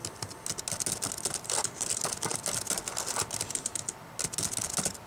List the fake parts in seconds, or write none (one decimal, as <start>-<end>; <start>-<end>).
none